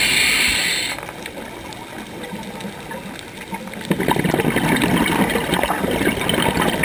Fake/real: real